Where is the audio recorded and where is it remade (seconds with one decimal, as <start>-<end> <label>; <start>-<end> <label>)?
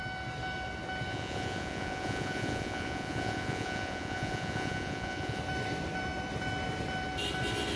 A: 0.0-1.1 recorded; 1.1-5.4 remade; 5.4-7.8 recorded